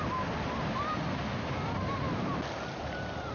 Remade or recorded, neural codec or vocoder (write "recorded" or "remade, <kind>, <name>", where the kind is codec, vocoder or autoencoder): recorded